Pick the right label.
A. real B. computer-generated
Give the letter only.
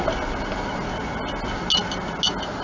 A